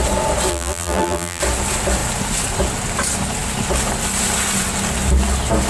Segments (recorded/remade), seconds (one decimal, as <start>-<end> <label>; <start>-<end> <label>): 0.0-0.5 recorded; 0.5-1.4 remade; 1.4-5.7 recorded